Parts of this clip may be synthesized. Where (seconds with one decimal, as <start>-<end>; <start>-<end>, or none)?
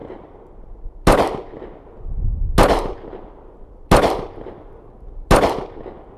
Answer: none